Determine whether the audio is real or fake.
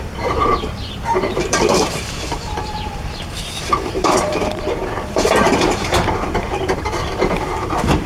fake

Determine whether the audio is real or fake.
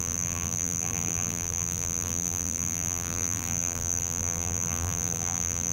fake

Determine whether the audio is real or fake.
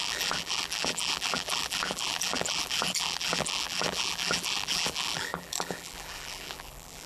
fake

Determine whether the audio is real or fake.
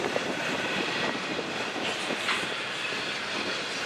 fake